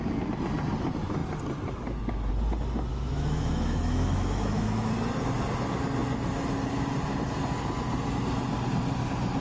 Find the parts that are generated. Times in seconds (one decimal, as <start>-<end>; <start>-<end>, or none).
2.9-4.9